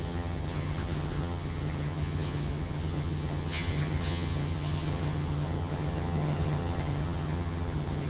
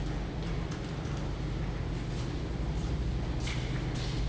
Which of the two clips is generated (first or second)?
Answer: first